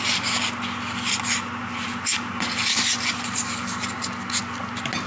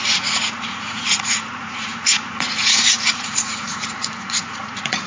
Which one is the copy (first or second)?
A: second